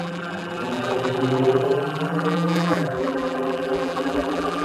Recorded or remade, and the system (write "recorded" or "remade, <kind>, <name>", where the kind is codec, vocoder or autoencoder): remade, vocoder, BigVGAN v2